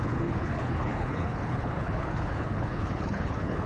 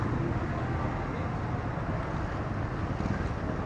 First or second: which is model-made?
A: first